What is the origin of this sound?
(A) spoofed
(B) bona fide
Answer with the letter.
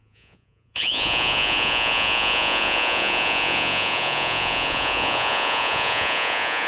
A